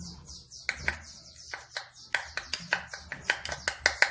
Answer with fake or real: real